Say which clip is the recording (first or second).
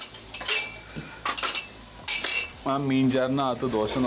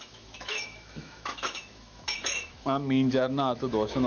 first